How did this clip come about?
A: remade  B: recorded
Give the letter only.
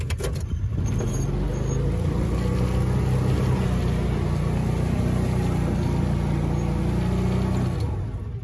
B